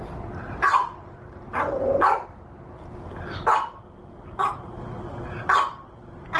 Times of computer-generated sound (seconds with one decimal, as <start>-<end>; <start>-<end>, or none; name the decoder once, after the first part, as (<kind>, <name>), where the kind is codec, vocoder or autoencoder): none